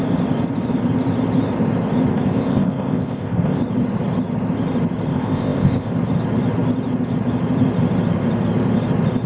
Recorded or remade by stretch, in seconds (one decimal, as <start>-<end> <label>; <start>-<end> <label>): 0.0-2.1 recorded; 2.1-3.6 remade; 3.6-5.1 recorded; 5.1-5.9 remade; 5.9-9.3 recorded